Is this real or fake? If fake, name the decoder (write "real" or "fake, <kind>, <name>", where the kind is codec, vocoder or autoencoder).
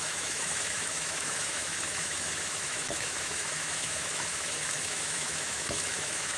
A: fake, autoencoder, DAC-VAE